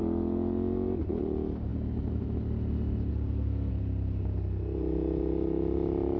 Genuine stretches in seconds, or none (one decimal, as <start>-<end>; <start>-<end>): 0.0-3.1; 3.7-6.2